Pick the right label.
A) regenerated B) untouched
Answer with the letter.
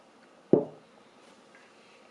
B